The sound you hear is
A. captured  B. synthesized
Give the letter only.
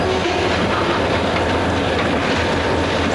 A